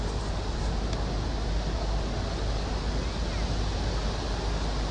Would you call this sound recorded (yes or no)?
yes